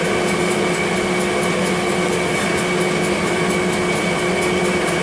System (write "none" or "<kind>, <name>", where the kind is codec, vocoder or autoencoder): none